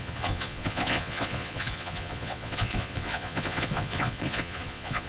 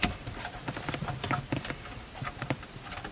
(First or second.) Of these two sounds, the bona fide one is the second